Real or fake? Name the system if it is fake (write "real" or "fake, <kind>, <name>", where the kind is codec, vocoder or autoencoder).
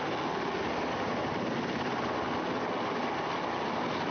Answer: real